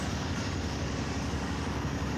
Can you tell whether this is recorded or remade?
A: remade